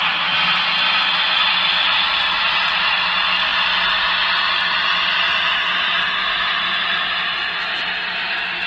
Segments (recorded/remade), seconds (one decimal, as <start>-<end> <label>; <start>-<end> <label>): 0.0-8.7 recorded